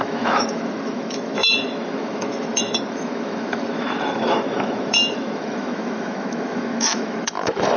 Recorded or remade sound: remade